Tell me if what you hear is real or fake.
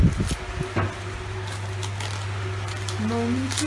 real